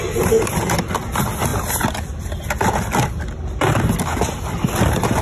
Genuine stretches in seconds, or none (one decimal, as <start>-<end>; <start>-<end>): 0.0-5.2